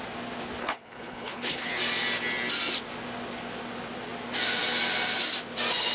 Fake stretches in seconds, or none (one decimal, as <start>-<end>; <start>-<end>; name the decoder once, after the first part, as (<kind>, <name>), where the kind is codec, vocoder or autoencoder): 0.6-1.7 (codec, HILCodec)